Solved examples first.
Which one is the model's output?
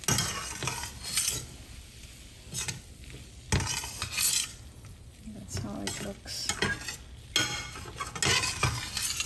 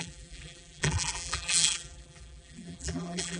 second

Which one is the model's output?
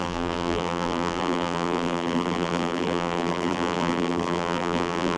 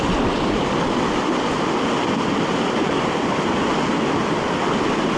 first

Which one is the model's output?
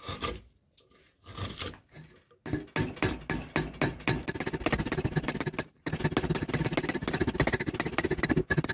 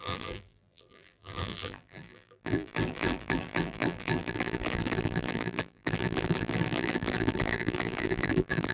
second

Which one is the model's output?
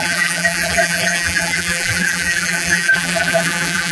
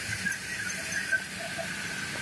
first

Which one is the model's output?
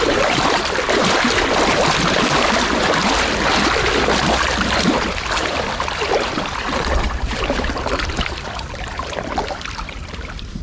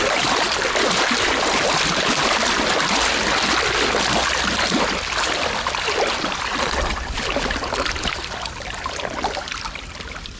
first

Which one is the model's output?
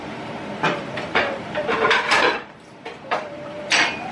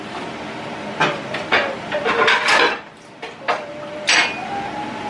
first